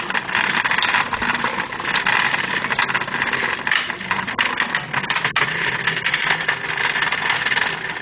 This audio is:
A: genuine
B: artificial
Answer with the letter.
A